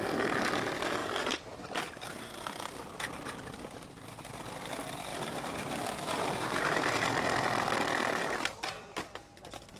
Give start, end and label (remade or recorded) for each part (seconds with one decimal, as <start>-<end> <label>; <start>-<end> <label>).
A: 0.0-1.0 recorded; 1.0-2.7 remade; 2.7-5.1 recorded; 5.1-6.9 remade; 6.9-9.8 recorded